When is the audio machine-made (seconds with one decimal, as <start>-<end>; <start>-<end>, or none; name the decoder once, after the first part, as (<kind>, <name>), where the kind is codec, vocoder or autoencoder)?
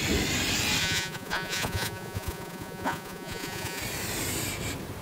0.8-3.8 (vocoder, Vocos)